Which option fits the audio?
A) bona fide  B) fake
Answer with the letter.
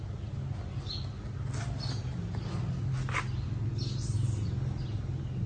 A